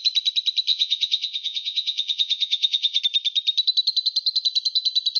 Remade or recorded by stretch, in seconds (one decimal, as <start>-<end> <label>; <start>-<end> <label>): 0.0-0.7 recorded; 0.7-3.0 remade; 3.0-5.2 recorded